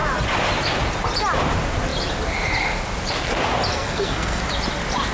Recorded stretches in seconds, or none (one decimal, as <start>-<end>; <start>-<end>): 0.0-3.7; 4.4-5.1